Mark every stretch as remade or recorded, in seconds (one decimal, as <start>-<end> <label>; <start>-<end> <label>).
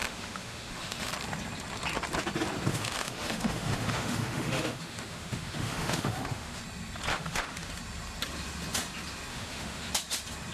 0.0-1.1 remade; 1.1-2.7 recorded; 2.7-6.6 remade; 6.6-7.1 recorded; 7.1-7.7 remade; 7.7-9.3 recorded; 9.3-9.9 remade; 9.9-10.5 recorded